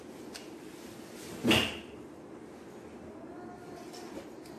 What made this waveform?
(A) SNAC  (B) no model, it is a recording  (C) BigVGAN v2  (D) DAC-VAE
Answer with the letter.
B